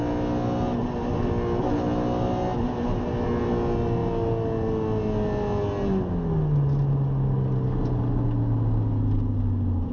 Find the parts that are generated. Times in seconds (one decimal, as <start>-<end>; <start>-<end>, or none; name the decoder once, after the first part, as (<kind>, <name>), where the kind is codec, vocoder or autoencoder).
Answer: none